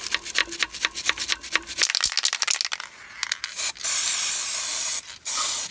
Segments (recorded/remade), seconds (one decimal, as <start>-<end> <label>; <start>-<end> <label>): 0.0-5.7 recorded